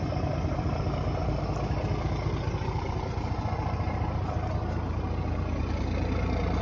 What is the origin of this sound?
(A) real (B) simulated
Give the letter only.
B